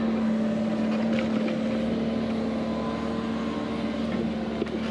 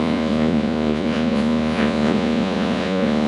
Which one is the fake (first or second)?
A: second